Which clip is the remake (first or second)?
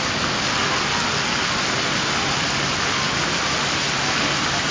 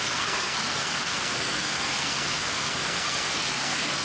second